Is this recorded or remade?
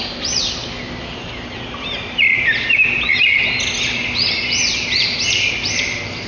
recorded